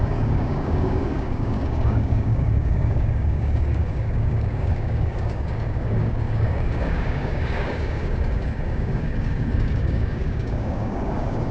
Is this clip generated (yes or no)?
yes